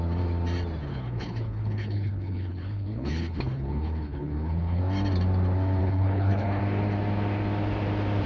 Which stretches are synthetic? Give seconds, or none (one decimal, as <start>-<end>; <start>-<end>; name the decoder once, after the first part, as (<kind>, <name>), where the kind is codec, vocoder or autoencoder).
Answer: 0.9-4.8 (codec, HILCodec); 5.8-6.6